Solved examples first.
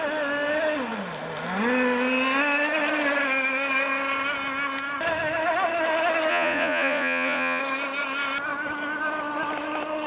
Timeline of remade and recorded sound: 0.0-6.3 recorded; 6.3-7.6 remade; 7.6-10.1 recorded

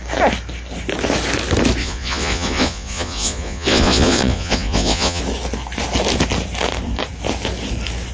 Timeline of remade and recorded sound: 0.0-1.8 recorded; 1.8-5.2 remade; 5.2-8.1 recorded

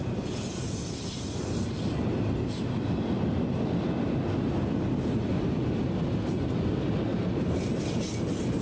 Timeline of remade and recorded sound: 0.0-7.1 recorded; 7.1-7.8 remade; 7.8-8.6 recorded

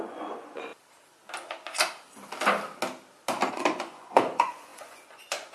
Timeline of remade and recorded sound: 0.0-0.7 remade; 0.7-3.5 recorded; 3.5-5.5 remade

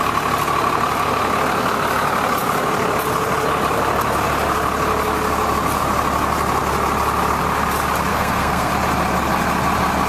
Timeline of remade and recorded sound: 0.0-8.1 recorded; 8.1-8.7 remade; 8.7-10.1 recorded

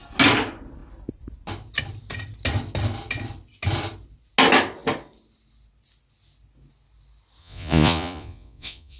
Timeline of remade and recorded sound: 0.0-7.4 recorded; 7.4-9.0 remade

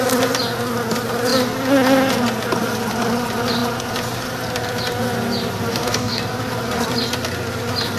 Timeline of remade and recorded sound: 0.0-5.7 recorded; 5.7-6.2 remade; 6.2-8.0 recorded

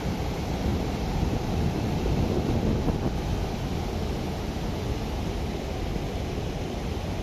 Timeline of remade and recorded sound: 0.0-7.2 recorded